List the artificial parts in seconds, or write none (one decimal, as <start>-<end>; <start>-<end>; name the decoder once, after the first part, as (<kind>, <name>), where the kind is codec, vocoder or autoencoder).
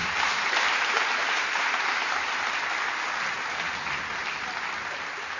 0.0-2.4 (vocoder, BigVGAN v2)